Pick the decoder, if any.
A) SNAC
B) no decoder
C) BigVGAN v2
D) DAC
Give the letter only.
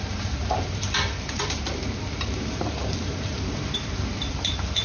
C